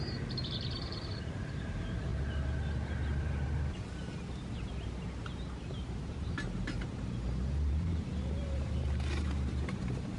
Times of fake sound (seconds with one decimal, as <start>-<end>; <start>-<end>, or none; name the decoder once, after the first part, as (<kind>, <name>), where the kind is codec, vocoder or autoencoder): 0.0-2.1 (vocoder, BigVGAN v2); 5.7-10.2